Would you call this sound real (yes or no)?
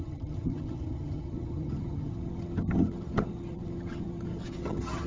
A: no